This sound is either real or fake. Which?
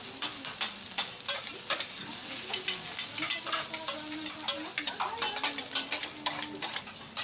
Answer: real